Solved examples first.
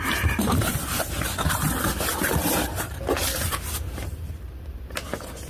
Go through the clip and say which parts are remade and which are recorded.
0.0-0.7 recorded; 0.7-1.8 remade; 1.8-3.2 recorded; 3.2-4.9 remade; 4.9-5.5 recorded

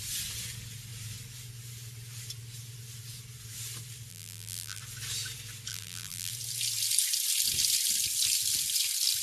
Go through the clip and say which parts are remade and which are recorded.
0.0-4.1 recorded; 4.1-4.8 remade; 4.8-5.7 recorded; 5.7-6.3 remade; 6.3-9.2 recorded

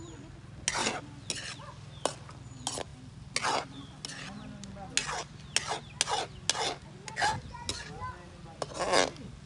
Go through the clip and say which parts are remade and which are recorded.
0.0-9.5 recorded

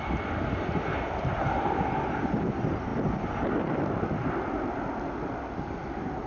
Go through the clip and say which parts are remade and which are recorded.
0.0-6.3 recorded

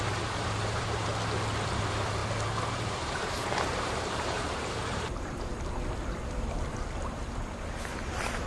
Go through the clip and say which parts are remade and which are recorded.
0.0-1.1 remade; 1.1-1.7 recorded; 1.7-2.2 remade; 2.2-2.8 recorded; 2.8-5.5 remade; 5.5-7.2 recorded; 7.2-8.5 remade

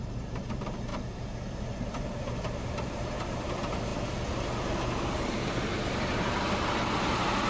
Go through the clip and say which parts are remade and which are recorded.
0.0-3.9 remade; 3.9-5.7 recorded; 5.7-7.5 remade

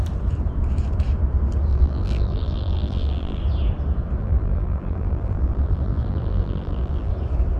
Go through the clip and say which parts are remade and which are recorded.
0.0-1.7 recorded; 1.7-3.4 remade; 3.4-4.2 recorded; 4.2-7.1 remade; 7.1-7.6 recorded